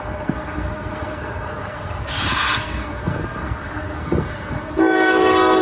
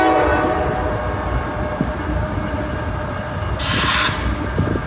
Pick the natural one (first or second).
second